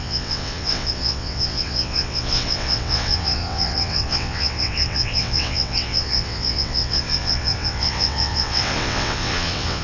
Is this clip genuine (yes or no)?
no